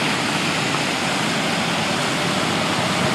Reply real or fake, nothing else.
real